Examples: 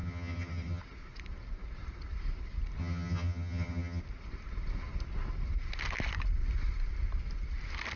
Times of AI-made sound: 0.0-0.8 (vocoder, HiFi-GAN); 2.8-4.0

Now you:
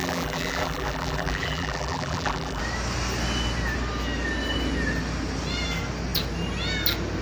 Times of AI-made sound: 0.0-2.6 (vocoder, BigVGAN v2)

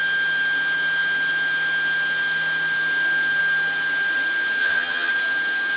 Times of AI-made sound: 4.6-5.1 (vocoder, HiFi-GAN)

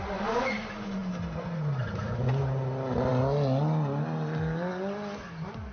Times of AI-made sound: none

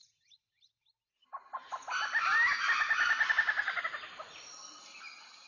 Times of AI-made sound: none

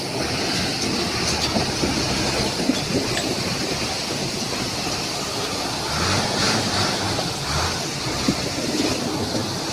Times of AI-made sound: 4.2-5.5 (vocoder, BigVGAN v2); 6.4-7.4

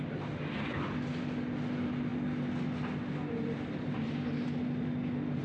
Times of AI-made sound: none